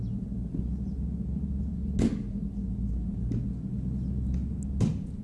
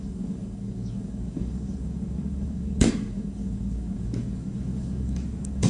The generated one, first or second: second